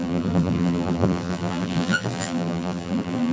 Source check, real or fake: fake